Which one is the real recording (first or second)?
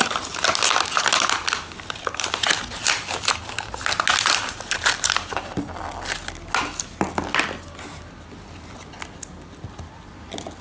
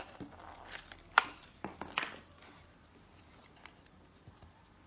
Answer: first